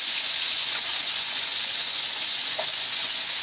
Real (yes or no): no